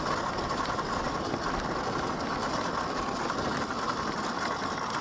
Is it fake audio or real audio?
real